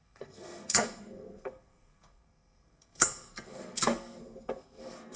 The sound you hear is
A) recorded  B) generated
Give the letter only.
B